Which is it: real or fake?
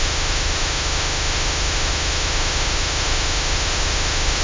fake